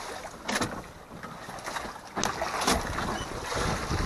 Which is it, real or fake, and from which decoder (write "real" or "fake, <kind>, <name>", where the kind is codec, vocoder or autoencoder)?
real